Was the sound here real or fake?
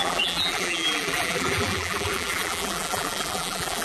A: fake